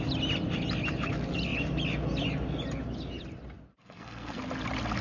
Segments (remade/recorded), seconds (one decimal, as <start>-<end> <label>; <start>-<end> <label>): 0.0-3.8 recorded; 3.8-4.4 remade; 4.4-5.0 recorded